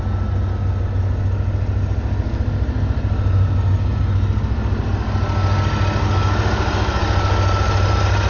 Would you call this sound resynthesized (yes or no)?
no